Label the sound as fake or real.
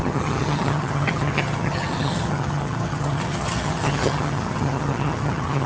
fake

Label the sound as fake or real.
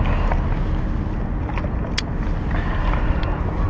real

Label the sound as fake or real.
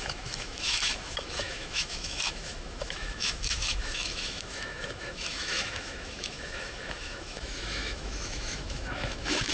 fake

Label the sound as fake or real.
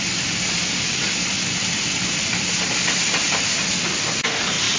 real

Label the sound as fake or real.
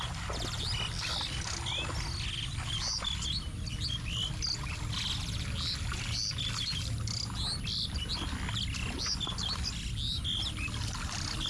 real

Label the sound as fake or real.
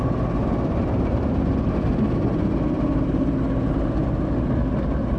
real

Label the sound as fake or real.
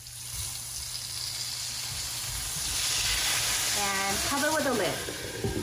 real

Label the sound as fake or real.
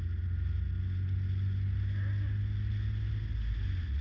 real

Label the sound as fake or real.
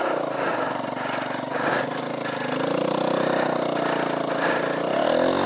real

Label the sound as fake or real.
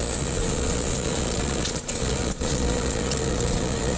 fake